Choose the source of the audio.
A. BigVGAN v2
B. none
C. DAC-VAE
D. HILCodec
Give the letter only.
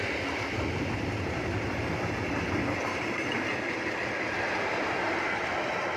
B